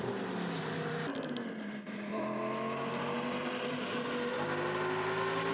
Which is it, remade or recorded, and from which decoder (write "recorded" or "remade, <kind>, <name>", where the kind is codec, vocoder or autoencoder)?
recorded